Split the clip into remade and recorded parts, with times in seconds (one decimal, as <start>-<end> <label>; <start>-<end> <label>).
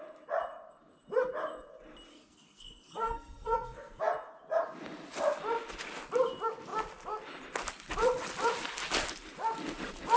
0.0-2.1 recorded; 2.1-4.0 remade; 4.0-10.2 recorded